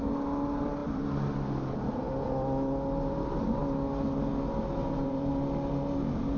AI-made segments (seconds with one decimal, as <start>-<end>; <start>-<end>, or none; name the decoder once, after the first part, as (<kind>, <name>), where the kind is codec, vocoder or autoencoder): 4.8-5.3 (vocoder, BigVGAN v2)